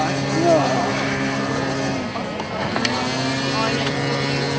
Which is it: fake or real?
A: real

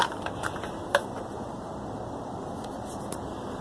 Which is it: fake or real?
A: real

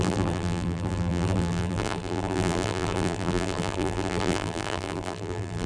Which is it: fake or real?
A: fake